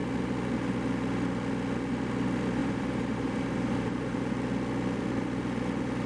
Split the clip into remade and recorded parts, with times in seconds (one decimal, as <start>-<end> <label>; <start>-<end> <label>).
0.0-2.6 recorded; 2.6-4.3 remade; 4.3-6.1 recorded